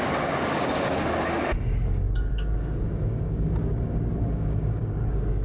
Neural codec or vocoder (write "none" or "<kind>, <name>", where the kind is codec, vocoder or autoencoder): codec, DAC